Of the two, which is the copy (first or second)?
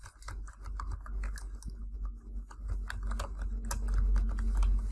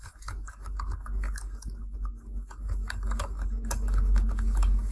second